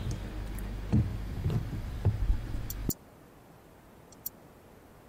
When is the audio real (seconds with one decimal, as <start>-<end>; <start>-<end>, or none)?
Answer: 0.0-1.1; 2.1-2.8